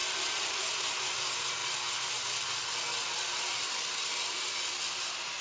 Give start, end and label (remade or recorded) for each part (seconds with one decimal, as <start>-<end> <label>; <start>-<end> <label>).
0.0-5.4 recorded